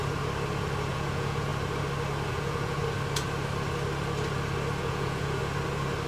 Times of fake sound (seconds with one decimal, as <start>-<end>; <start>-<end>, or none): 0.9-1.5; 2.3-2.8; 4.8-5.4

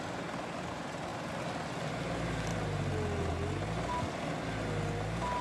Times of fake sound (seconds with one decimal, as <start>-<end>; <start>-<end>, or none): none

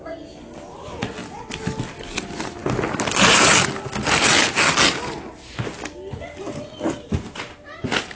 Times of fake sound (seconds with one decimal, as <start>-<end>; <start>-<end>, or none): none

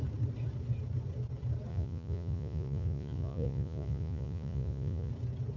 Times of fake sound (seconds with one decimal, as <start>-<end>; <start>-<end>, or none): 1.7-5.1

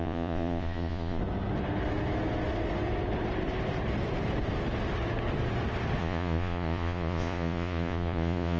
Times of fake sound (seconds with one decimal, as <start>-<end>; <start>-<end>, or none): 0.0-1.2; 6.0-8.6